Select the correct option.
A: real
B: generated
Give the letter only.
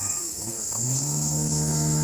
B